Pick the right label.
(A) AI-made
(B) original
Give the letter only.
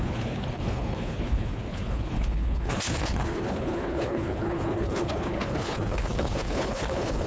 A